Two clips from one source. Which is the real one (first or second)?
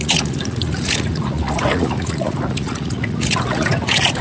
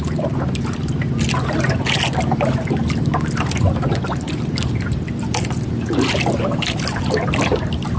second